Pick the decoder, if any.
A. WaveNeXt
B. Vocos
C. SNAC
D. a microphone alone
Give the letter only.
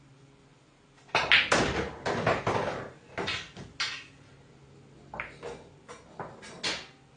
D